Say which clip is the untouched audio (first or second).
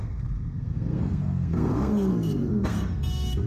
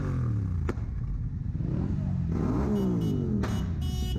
second